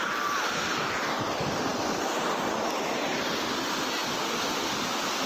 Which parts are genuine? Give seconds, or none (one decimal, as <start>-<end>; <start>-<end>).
0.0-5.3